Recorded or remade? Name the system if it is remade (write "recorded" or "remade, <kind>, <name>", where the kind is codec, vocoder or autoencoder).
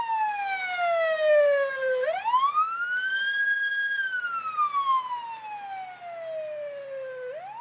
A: recorded